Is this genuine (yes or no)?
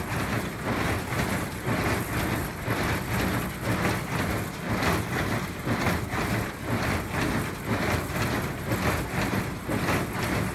yes